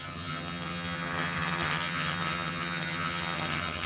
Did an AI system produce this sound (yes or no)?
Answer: yes